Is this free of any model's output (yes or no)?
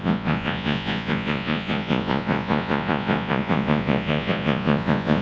no